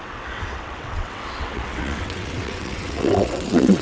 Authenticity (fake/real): fake